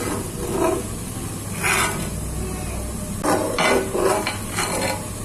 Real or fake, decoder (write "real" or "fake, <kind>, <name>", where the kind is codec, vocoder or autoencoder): real